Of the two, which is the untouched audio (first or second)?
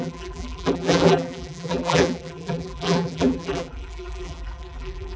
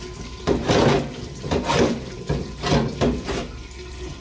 second